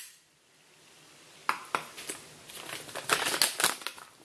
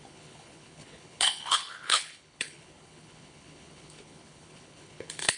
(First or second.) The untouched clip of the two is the first